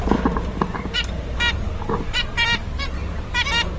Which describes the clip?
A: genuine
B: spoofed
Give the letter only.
A